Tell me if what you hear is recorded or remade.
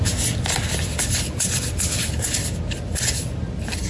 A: recorded